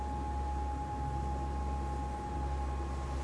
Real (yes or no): yes